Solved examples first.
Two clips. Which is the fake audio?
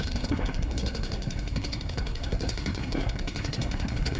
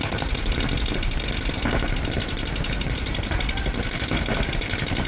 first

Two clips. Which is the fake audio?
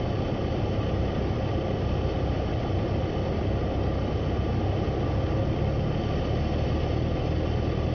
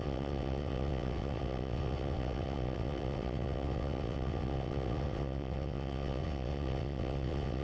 second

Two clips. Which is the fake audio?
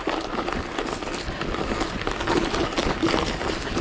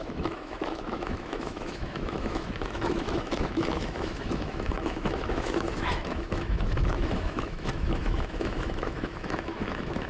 second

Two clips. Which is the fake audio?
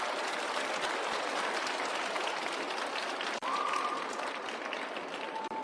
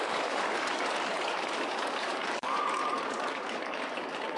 second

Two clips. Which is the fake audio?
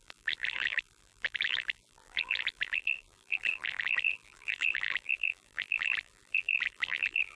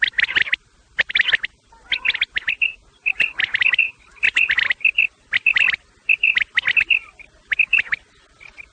first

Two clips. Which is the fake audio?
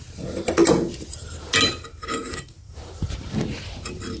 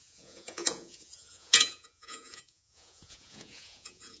second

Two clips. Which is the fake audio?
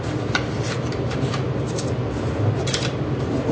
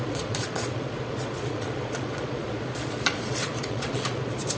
second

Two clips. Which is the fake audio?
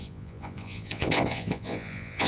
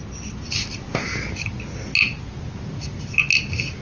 first